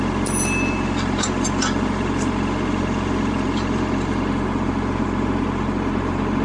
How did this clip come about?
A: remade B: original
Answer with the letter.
B